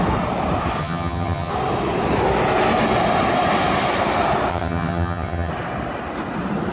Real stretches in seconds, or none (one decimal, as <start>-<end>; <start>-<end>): 0.0-0.8; 1.5-4.5; 5.5-6.7